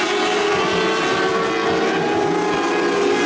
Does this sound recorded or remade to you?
recorded